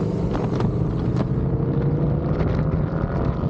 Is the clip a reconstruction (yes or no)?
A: no